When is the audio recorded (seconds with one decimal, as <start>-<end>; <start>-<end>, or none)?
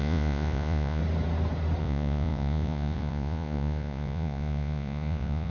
1.0-1.8